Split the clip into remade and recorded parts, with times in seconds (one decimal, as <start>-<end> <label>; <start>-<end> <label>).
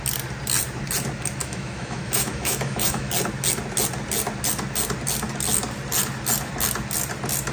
0.0-1.4 recorded; 1.4-3.1 remade; 3.1-7.5 recorded